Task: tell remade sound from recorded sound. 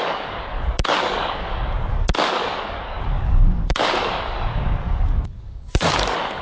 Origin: remade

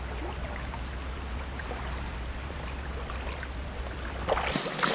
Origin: recorded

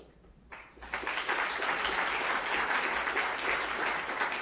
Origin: recorded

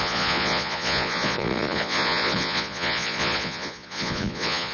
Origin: remade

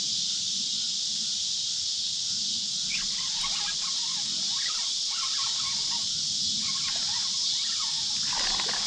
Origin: recorded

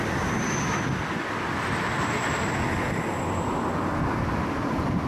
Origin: recorded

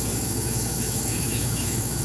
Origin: remade